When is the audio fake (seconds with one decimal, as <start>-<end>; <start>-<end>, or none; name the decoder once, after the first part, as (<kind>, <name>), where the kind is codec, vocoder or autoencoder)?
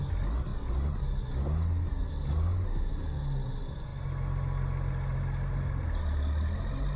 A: none